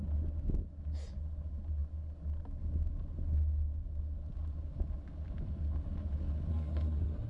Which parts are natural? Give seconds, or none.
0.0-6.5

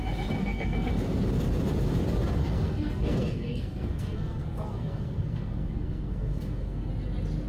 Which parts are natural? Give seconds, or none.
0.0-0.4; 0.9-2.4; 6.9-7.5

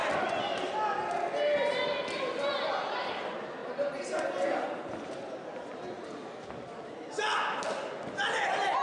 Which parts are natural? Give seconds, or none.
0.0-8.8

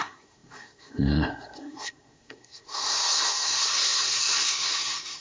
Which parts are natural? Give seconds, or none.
none